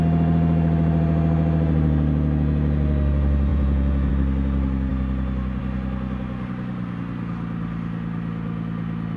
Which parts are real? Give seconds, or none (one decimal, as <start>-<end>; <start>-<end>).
0.0-3.5; 4.1-9.2